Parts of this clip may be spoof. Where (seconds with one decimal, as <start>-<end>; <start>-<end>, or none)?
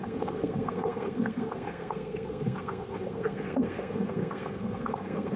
0.0-5.4